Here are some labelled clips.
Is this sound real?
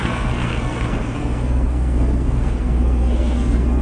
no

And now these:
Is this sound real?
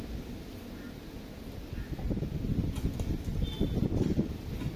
yes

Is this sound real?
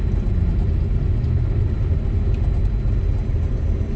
yes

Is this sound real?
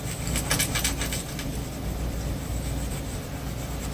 yes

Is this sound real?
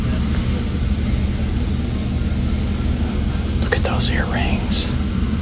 yes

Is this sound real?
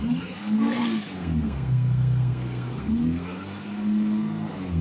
no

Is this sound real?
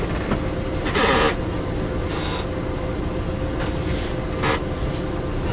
yes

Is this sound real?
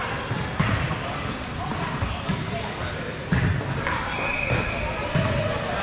yes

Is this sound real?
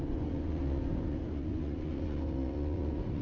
no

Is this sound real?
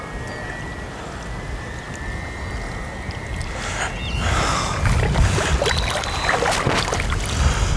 yes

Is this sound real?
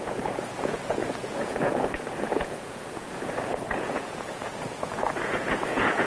no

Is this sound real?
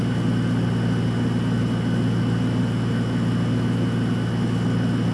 yes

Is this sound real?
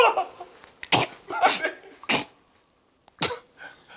yes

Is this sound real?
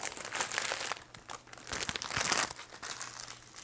yes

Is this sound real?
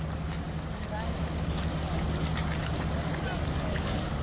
yes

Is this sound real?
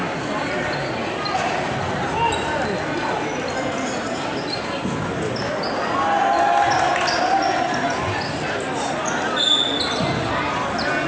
yes